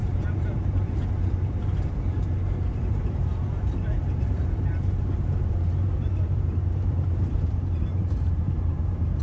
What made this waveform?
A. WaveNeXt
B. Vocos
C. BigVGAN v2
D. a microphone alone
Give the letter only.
C